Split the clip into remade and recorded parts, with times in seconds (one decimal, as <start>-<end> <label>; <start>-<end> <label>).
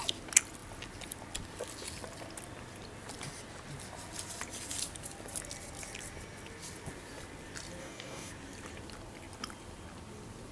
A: 0.0-7.8 recorded; 7.8-8.3 remade; 8.3-10.5 recorded